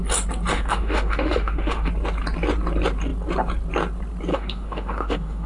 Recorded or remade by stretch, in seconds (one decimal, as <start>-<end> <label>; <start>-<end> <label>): 0.0-0.5 recorded; 0.5-1.9 remade; 1.9-4.3 recorded; 4.3-5.5 remade